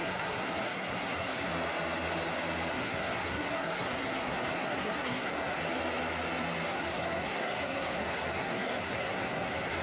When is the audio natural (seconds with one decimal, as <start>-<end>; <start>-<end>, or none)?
1.5-2.7; 5.6-6.7